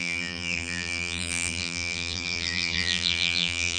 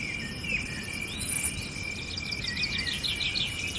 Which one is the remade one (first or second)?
first